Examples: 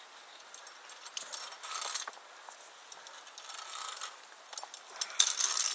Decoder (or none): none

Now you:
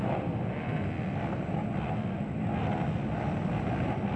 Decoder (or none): none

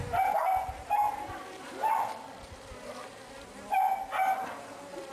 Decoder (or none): none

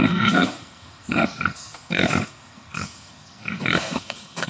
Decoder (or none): codec, SNAC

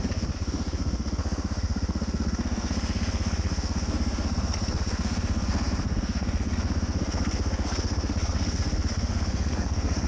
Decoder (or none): codec, SNAC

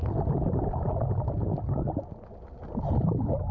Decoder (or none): none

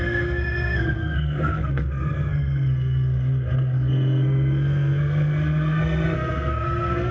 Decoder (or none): codec, SNAC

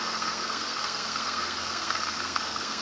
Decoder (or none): codec, SNAC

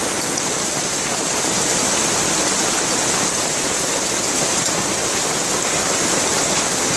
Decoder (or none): none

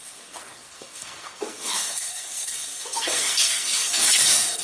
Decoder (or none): codec, SNAC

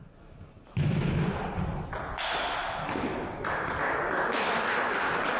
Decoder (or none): none